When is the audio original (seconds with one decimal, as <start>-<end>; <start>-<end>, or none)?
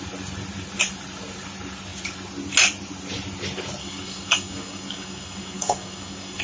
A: 0.0-3.8